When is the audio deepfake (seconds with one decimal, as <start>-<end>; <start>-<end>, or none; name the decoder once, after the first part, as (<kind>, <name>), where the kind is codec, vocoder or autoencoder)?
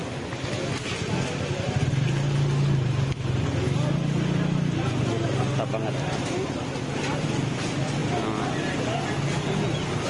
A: none